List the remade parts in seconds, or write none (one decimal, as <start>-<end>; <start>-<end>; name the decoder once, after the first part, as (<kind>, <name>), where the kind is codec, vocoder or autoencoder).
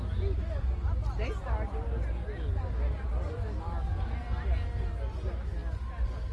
none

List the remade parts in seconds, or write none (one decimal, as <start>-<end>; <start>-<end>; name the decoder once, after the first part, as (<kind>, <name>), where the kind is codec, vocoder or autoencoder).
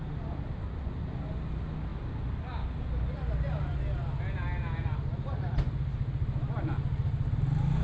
none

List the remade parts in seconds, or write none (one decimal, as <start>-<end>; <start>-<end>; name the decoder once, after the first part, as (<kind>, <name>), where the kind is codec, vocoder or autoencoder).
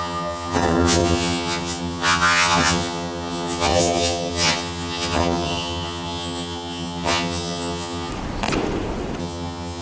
0.0-8.1 (vocoder, HiFi-GAN); 9.2-9.8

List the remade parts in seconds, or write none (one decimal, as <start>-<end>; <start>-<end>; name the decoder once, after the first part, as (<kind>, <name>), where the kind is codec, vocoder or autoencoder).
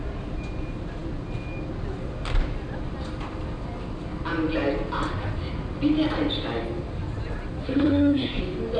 7.6-8.4 (codec, SNAC)